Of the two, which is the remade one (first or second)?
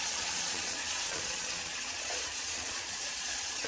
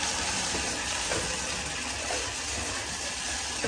first